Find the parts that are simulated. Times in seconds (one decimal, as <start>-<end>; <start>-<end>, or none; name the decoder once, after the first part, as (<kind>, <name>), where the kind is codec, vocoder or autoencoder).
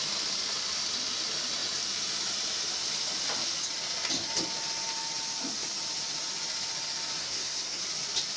7.2-7.8 (codec, SNAC)